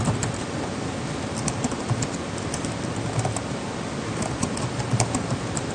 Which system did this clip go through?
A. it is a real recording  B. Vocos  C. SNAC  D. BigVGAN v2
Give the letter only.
A